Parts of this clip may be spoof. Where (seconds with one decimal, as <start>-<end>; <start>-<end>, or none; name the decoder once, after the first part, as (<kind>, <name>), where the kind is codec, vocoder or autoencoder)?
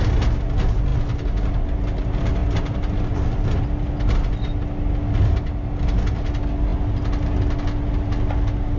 none